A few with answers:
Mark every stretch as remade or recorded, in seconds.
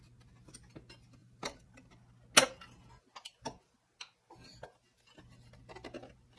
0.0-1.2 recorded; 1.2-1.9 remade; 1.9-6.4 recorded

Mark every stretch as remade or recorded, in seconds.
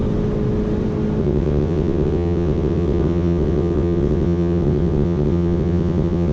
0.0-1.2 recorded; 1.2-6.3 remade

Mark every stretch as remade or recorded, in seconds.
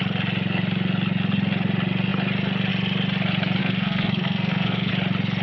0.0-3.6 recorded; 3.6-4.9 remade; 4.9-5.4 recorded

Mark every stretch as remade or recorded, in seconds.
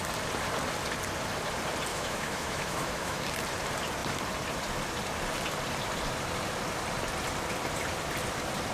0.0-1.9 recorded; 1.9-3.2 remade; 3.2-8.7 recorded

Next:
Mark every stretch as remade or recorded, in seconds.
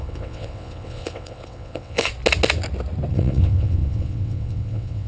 0.0-2.1 remade; 2.1-3.1 recorded; 3.1-5.1 remade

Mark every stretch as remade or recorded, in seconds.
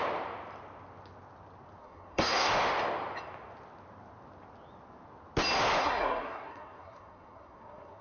0.0-1.8 recorded; 1.8-2.5 remade; 2.5-5.8 recorded; 5.8-8.0 remade